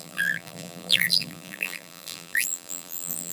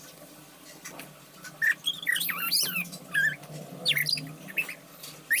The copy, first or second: first